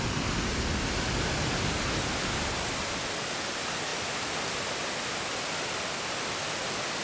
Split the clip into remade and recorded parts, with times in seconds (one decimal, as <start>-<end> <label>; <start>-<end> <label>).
0.0-7.0 recorded